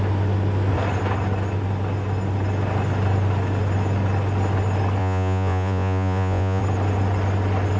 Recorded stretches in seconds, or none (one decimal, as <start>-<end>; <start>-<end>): 0.0-5.0; 6.6-7.8